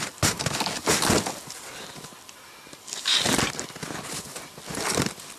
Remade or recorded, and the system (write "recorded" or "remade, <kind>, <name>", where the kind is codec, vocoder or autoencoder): recorded